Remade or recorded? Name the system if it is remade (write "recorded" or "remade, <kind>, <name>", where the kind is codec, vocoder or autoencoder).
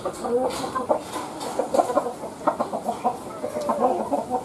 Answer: recorded